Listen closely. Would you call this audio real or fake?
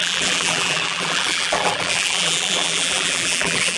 fake